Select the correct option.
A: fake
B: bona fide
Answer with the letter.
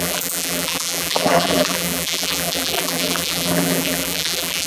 A